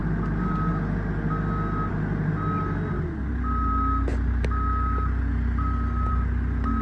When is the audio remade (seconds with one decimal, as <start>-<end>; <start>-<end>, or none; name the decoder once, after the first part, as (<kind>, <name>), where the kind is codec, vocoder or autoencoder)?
none